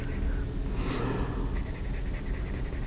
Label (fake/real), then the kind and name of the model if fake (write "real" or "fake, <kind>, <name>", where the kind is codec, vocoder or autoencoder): real